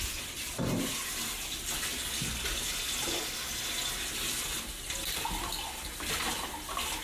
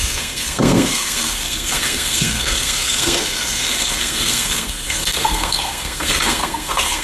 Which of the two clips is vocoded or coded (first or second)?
second